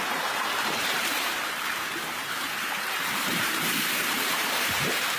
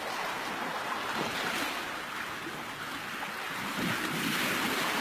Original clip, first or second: second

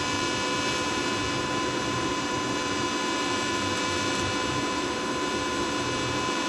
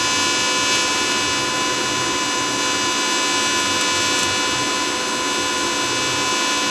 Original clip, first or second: second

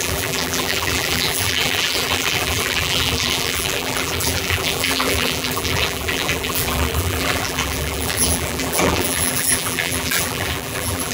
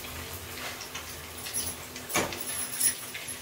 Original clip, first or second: second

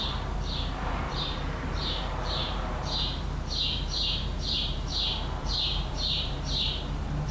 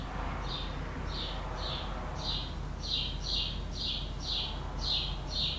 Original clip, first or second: second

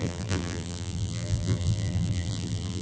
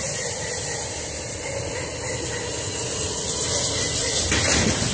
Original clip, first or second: second